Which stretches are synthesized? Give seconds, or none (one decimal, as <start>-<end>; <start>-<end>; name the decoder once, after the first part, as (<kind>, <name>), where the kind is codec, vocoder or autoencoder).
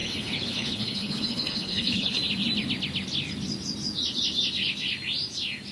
0.0-2.2 (codec, HILCodec)